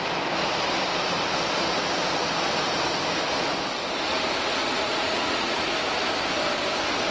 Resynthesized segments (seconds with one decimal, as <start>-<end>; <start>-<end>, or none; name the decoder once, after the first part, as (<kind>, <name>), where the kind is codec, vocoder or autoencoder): 4.6-5.7 (vocoder, Vocos)